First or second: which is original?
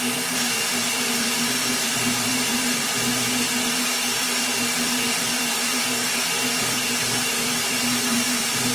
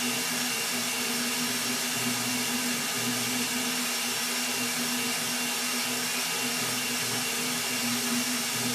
second